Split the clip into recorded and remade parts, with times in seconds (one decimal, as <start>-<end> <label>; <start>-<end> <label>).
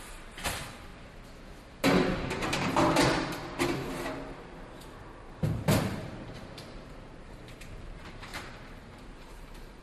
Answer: 0.0-0.9 remade; 0.9-2.3 recorded; 2.3-3.4 remade; 3.4-5.8 recorded; 5.8-9.8 remade